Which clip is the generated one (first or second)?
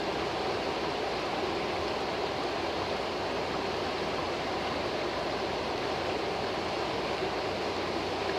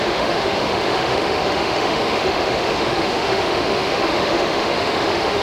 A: second